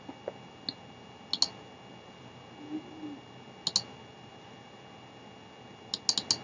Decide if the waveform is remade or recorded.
recorded